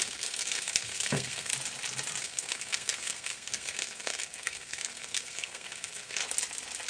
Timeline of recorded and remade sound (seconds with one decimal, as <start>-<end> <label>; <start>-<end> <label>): 0.0-1.5 remade; 1.5-2.2 recorded; 2.2-6.2 remade; 6.2-6.9 recorded